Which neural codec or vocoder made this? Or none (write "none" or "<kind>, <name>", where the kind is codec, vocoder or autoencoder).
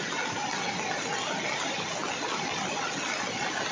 none